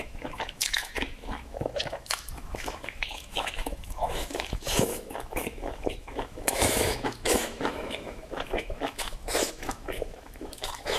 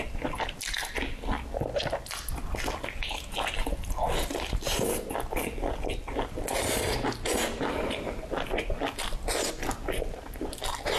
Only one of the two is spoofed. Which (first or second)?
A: first